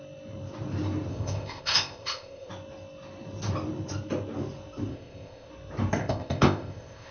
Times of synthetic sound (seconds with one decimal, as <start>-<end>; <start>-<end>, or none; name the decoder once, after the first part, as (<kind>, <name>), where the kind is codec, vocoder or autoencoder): 1.1-2.5 (codec, ZipCodec); 4.9-5.5; 6.0-7.1